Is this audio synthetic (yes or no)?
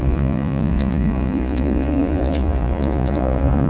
yes